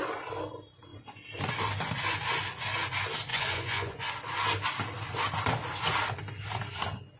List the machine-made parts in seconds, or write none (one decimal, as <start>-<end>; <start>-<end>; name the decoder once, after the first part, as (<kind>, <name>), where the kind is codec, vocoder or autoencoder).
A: 3.3-4.1 (vocoder, Vocos)